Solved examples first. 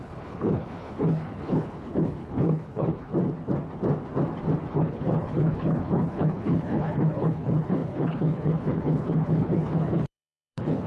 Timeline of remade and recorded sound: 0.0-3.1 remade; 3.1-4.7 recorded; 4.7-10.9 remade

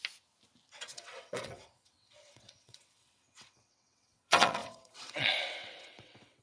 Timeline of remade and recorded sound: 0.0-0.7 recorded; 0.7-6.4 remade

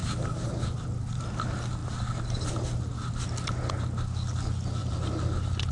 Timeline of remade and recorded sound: 0.0-5.7 recorded